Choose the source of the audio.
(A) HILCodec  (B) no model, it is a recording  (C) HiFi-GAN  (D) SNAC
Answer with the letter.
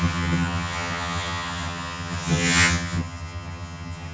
C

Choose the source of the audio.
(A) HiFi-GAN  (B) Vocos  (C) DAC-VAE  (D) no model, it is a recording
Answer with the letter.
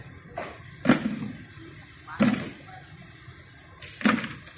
D